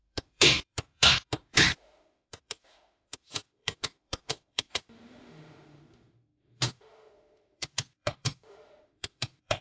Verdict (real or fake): fake